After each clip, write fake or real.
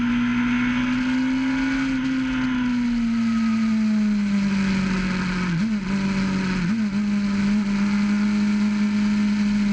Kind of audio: real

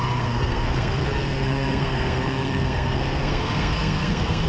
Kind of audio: fake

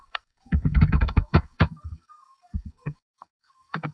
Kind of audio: fake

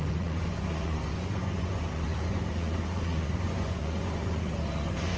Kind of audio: fake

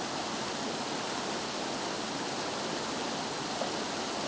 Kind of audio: real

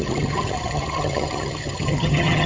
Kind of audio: fake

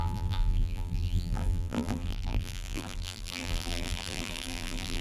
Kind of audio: fake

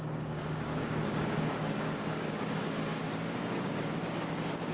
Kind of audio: fake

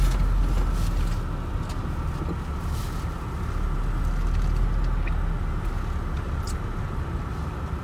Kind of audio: real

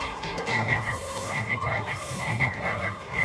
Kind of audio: fake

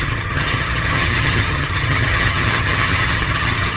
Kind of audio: fake